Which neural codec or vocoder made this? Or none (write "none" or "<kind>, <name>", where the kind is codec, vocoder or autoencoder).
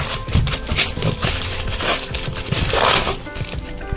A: none